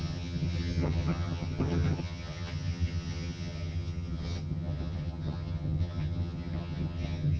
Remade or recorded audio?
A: remade